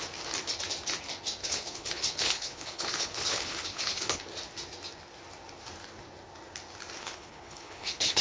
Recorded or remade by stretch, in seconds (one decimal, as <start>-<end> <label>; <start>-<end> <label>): 0.0-1.4 recorded; 1.4-4.2 remade; 4.2-7.0 recorded; 7.0-8.2 remade